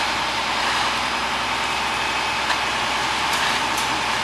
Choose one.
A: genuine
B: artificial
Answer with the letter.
A